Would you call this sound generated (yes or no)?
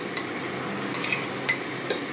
no